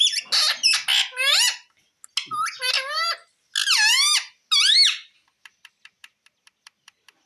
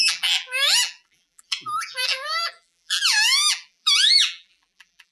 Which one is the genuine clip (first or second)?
first